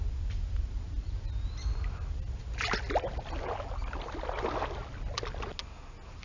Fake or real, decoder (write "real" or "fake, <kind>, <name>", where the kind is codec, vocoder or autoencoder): real